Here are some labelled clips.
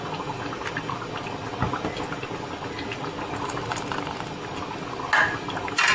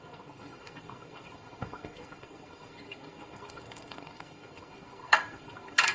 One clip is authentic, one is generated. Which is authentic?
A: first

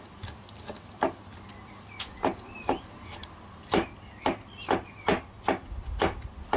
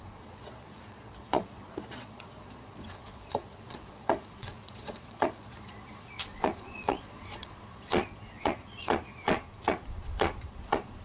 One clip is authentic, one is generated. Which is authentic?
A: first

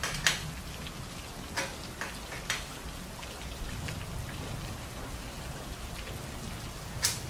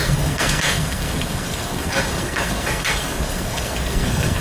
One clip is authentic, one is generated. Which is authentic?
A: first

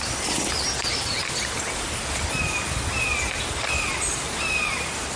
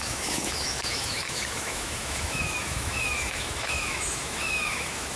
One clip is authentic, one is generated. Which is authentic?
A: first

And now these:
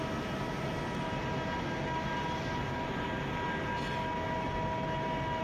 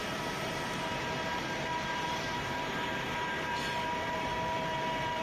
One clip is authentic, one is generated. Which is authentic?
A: first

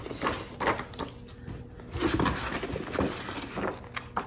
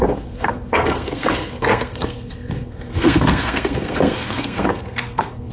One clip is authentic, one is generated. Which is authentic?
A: first